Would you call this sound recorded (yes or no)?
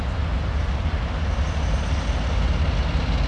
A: yes